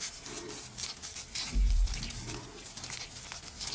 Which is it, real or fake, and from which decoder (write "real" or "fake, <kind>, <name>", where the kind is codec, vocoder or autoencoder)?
real